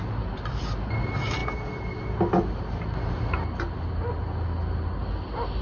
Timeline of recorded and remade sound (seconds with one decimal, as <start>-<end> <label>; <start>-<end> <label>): 0.0-5.6 recorded